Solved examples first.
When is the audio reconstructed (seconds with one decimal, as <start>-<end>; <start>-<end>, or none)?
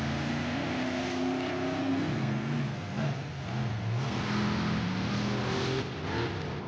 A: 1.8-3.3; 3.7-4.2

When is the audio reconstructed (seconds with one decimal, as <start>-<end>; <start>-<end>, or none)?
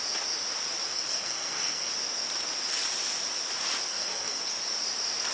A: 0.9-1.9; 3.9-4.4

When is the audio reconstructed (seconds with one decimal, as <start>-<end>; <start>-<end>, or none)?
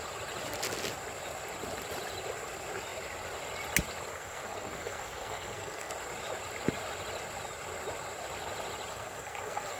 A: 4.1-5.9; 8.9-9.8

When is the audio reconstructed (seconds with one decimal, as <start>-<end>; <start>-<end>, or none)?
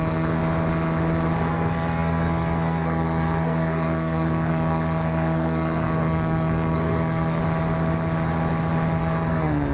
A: 0.0-0.4; 1.5-7.4; 9.0-9.7